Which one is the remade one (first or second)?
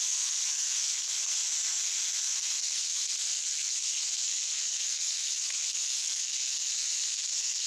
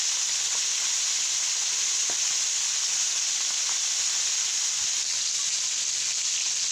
first